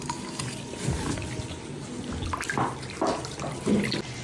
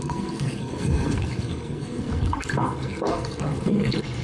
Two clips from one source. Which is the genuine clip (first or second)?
first